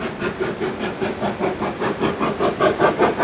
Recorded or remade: recorded